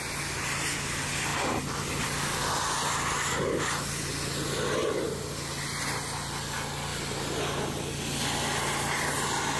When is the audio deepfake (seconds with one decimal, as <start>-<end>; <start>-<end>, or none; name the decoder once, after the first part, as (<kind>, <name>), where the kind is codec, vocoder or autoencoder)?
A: none